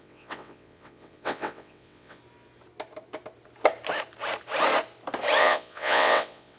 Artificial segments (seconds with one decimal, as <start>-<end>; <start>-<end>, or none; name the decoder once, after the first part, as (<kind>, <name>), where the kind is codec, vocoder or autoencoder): 0.0-2.2 (vocoder, WaveNeXt); 5.4-6.6